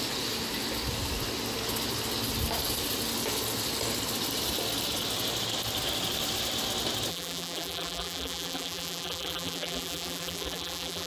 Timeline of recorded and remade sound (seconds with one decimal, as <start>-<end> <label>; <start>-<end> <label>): 0.0-7.1 recorded; 7.1-11.1 remade